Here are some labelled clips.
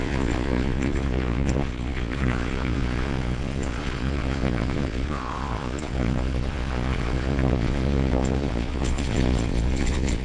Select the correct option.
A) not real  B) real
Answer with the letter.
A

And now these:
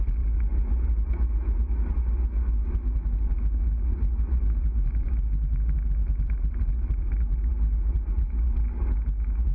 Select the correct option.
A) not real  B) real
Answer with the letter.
B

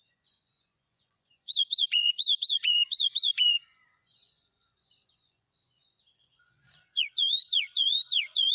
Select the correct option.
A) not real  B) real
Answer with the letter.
A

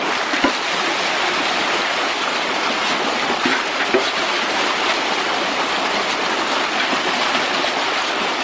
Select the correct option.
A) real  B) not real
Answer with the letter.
A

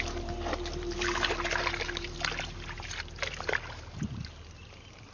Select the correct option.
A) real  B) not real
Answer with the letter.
A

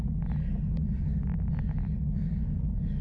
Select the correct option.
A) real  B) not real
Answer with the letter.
A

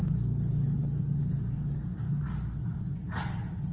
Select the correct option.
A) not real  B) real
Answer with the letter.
B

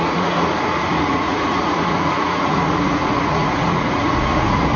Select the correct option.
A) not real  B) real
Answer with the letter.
A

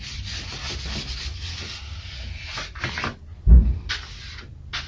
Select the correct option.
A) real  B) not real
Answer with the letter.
A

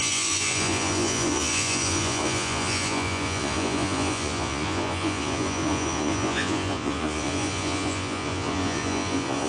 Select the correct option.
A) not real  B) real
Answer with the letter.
A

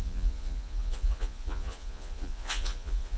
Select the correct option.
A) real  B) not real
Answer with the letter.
B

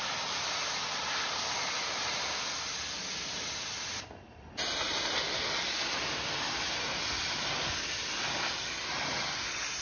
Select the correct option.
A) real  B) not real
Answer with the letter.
A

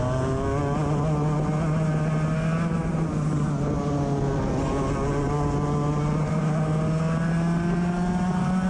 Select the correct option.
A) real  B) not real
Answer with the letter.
A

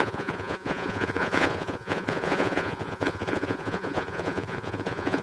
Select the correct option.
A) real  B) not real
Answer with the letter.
B